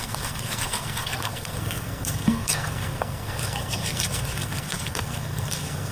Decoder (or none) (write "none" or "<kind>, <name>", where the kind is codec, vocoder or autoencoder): codec, SNAC